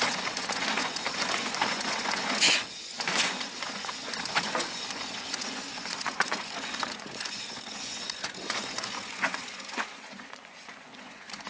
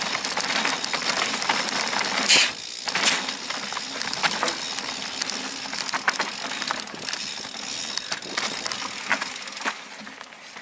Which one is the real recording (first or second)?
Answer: second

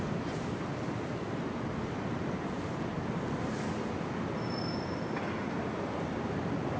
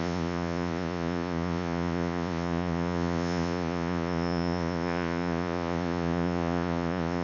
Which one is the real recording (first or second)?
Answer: first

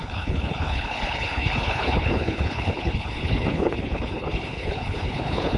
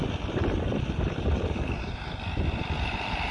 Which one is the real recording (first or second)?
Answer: second